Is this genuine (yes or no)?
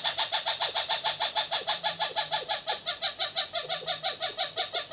yes